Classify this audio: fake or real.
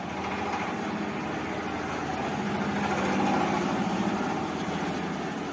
real